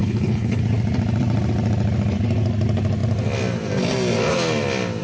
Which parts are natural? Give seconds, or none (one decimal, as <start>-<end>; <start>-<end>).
0.6-5.0